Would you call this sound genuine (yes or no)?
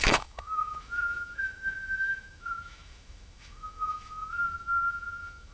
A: no